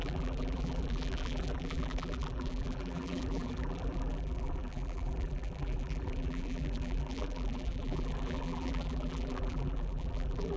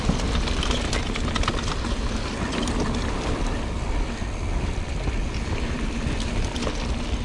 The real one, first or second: second